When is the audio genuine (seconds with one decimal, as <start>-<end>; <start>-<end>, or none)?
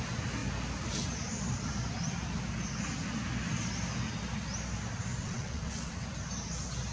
0.0-5.2; 5.9-6.9